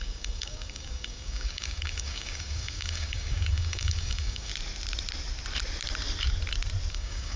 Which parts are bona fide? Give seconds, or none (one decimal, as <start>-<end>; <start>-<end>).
4.5-6.9